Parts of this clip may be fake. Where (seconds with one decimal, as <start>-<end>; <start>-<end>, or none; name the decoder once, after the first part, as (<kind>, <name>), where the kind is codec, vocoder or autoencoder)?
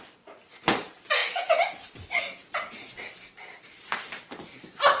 none